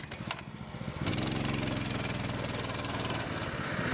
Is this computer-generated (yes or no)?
no